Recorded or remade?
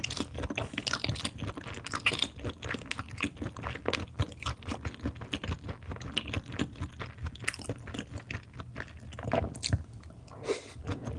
recorded